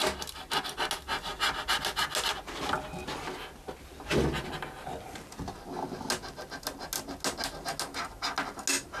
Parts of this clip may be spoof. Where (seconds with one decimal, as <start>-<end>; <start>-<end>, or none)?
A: none